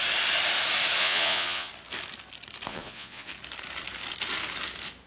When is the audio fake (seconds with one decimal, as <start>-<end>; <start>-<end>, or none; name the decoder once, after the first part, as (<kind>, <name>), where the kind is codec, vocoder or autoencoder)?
1.0-1.7 (vocoder, Vocos); 2.7-3.3